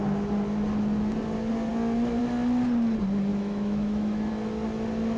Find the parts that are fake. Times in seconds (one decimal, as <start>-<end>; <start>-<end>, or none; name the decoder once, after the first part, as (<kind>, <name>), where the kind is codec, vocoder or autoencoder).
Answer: 3.3-4.3 (autoencoder, DAC-VAE)